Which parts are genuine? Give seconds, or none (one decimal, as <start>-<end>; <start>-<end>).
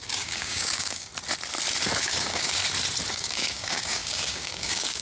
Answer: 1.1-2.0; 2.6-3.1